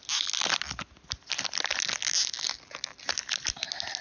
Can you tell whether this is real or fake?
real